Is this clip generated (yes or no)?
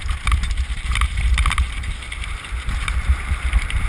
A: yes